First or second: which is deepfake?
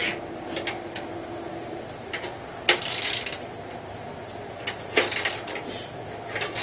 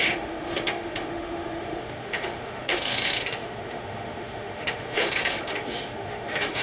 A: second